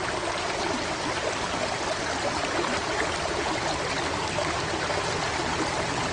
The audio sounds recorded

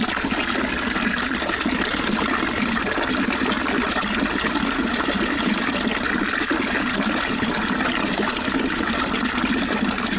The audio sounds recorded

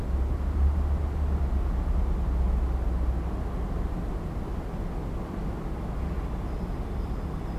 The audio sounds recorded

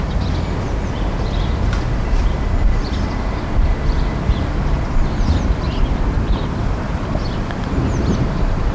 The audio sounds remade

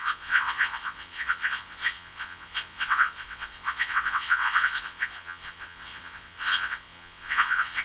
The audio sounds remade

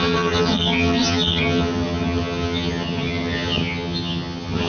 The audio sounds remade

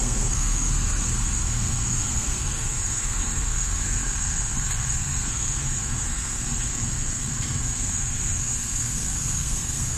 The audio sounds remade